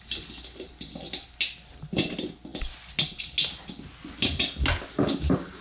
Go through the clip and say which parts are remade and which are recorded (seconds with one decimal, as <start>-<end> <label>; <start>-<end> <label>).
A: 0.0-5.6 recorded